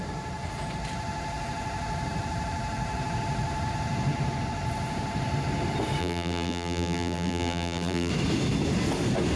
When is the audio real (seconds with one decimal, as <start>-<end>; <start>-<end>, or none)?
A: 0.0-6.0; 8.1-9.4